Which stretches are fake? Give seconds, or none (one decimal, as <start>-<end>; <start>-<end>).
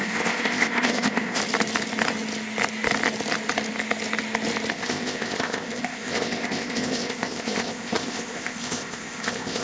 0.0-1.4; 4.7-9.6